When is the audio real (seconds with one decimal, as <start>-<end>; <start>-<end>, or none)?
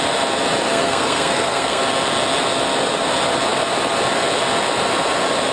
0.0-0.7; 1.8-5.5